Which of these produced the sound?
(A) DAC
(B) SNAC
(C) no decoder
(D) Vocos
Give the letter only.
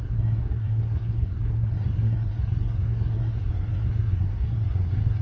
B